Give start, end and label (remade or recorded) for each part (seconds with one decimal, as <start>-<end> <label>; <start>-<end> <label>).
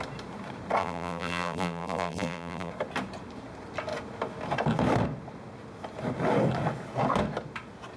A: 0.0-0.8 recorded; 0.8-2.7 remade; 2.7-8.0 recorded